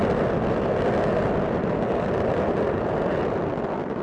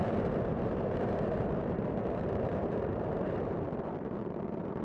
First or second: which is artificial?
second